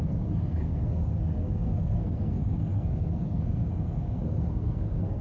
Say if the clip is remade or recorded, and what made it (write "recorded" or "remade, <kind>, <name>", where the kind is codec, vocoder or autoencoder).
remade, codec, SNAC